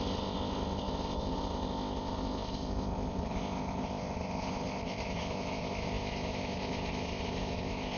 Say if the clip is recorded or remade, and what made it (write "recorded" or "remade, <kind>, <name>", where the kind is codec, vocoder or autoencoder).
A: remade, codec, ZipCodec